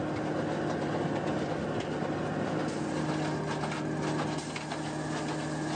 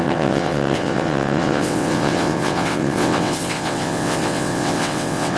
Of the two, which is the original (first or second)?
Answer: first